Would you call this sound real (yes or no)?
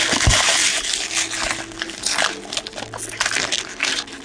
yes